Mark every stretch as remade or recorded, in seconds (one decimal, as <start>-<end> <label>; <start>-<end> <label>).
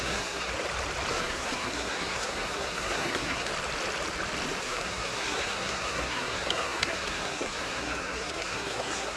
0.0-0.5 remade; 0.5-1.1 recorded; 1.1-3.5 remade; 3.5-4.6 recorded; 4.6-9.2 remade